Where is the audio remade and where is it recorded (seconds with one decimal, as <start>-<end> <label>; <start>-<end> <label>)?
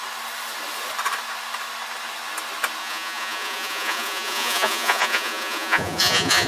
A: 0.0-2.8 recorded; 2.8-6.5 remade